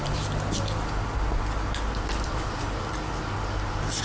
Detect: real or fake real